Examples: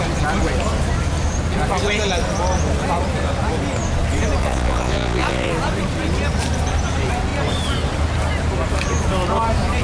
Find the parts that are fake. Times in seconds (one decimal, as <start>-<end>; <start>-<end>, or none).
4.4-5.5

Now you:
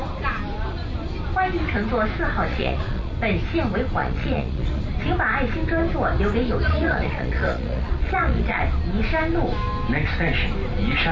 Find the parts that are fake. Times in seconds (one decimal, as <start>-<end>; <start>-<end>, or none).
2.5-3.1; 4.0-4.8; 6.6-8.6

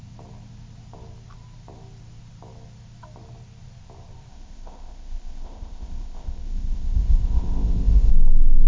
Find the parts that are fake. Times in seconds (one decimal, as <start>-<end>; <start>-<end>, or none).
4.3-8.1